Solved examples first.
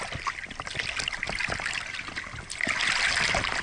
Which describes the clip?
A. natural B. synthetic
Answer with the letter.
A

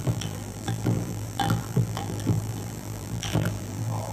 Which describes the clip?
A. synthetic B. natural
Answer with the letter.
A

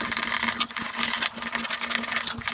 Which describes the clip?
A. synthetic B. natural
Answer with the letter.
B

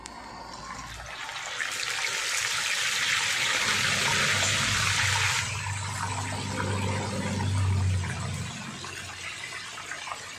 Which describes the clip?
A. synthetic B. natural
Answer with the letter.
B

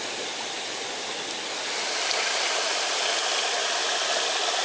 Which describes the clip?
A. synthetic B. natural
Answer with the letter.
A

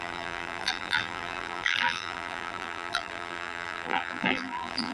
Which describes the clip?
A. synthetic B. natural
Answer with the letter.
A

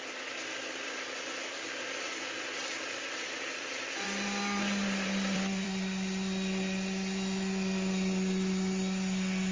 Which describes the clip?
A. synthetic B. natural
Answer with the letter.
A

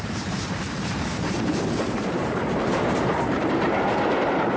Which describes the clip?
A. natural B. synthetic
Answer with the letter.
B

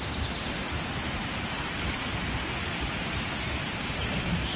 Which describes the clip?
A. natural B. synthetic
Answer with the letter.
A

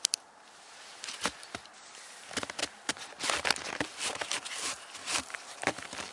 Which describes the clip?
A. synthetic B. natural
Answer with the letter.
A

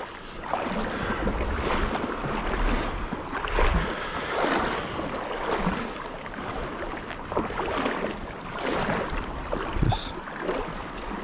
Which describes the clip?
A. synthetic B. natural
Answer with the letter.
B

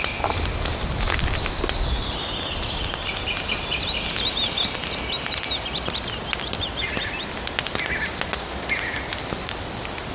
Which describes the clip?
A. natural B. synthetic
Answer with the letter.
A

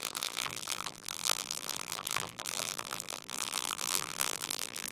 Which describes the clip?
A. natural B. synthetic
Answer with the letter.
B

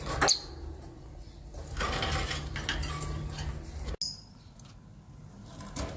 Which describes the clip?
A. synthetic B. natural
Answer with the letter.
B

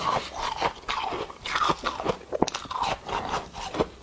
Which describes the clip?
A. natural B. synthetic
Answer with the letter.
A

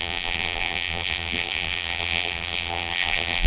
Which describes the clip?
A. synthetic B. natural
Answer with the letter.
A